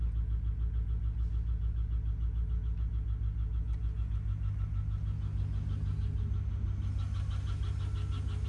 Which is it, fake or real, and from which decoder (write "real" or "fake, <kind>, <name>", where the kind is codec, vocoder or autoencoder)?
real